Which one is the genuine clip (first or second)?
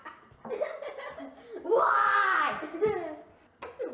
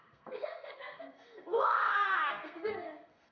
first